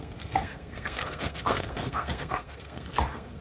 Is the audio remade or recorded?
remade